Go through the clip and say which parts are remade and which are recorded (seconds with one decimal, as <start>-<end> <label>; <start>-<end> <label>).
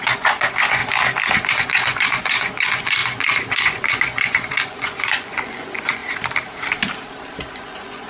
0.0-0.8 remade; 0.8-1.5 recorded; 1.5-6.0 remade; 6.0-7.5 recorded; 7.5-8.1 remade